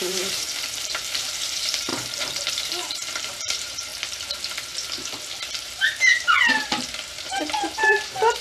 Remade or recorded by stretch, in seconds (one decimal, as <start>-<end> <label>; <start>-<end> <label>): 0.0-3.9 remade; 3.9-5.6 recorded; 5.6-8.4 remade